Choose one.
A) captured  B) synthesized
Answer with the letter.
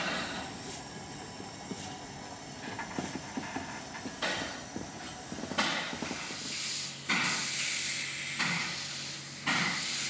A